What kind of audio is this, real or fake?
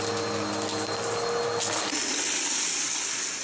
real